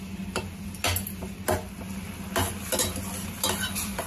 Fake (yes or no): no